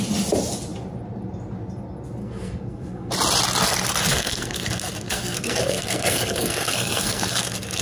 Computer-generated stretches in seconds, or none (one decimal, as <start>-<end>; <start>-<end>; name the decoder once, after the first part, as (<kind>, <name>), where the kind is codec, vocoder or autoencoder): 2.2-3.1 (codec, SNAC); 4.1-7.8